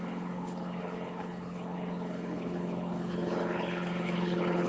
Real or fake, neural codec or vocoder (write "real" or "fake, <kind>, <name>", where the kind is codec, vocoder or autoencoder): fake, codec, HILCodec